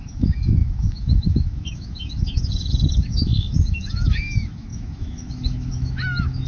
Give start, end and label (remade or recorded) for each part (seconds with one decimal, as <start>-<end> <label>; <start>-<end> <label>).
0.0-6.5 remade